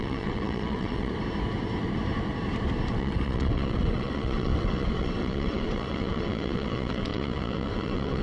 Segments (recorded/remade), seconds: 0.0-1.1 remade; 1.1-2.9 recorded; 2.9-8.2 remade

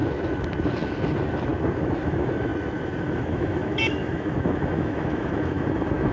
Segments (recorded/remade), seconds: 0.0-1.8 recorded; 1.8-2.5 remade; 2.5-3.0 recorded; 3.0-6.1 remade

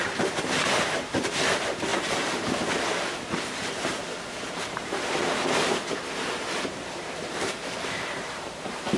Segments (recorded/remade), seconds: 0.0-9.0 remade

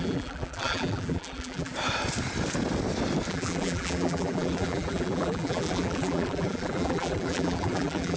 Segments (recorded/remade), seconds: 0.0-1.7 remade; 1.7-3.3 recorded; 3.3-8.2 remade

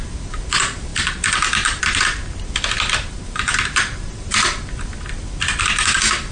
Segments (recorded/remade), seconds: 0.0-6.3 recorded

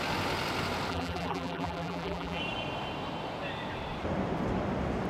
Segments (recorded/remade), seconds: 0.0-0.9 recorded; 0.9-2.4 remade; 2.4-5.1 recorded